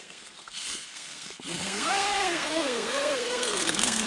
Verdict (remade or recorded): remade